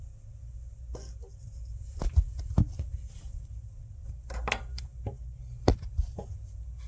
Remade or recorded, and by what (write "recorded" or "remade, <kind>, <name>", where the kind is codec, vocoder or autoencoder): recorded